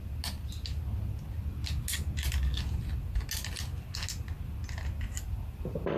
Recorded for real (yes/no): yes